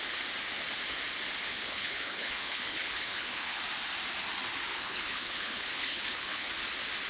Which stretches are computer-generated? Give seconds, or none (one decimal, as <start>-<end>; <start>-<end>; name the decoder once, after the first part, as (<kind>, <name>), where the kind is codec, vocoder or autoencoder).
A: 1.5-3.6 (codec, HILCodec); 4.7-6.5